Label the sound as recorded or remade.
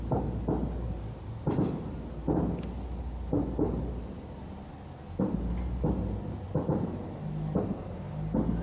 recorded